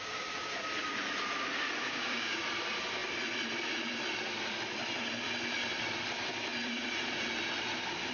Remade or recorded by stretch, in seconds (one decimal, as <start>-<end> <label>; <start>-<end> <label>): 0.0-1.8 recorded; 1.8-2.4 remade; 2.4-8.1 recorded